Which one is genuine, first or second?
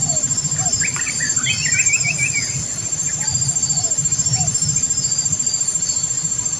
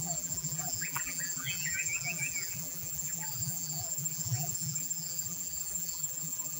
first